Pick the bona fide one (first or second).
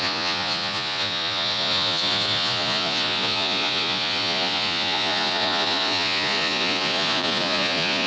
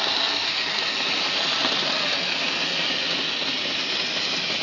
second